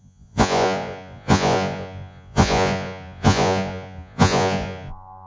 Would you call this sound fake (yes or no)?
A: yes